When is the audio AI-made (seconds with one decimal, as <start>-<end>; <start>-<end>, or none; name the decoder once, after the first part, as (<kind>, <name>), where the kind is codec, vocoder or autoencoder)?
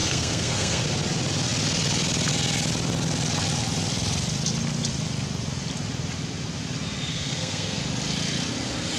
0.0-0.8 (codec, SNAC); 7.1-7.8